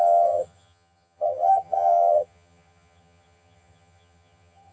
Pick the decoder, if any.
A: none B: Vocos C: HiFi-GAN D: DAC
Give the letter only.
C